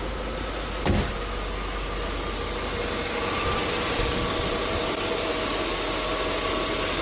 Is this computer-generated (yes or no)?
no